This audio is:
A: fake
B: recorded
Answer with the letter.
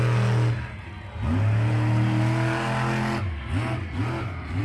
B